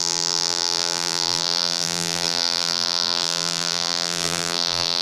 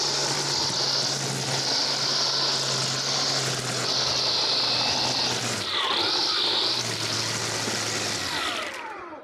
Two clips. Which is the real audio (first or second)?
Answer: second